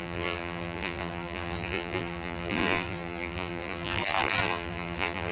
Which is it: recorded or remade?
remade